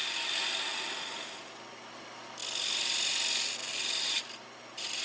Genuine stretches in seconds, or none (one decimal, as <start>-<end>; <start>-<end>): 0.0-5.0